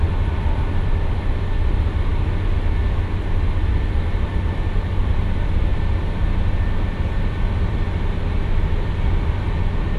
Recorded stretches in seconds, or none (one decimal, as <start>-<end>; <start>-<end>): 0.0-5.7; 9.5-10.0